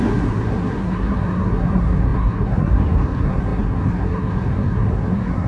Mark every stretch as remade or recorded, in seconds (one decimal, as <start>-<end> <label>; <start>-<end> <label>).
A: 0.0-5.5 remade